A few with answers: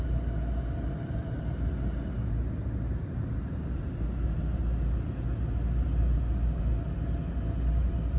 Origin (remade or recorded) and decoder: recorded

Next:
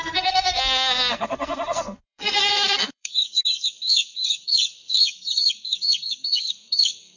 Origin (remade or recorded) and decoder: remade, codec, SNAC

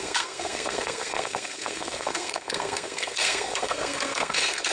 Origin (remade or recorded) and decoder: remade, codec, SNAC